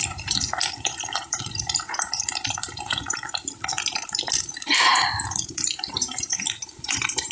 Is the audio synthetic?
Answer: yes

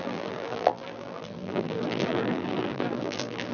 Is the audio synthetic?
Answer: yes